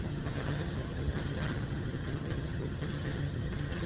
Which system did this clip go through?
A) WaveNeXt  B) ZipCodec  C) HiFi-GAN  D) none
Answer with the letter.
C